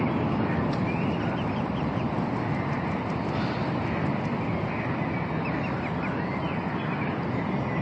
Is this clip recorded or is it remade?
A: recorded